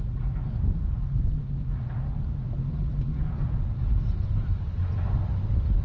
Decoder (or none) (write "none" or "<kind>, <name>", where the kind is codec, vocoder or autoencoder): none